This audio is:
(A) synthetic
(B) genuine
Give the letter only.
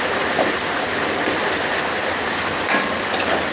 B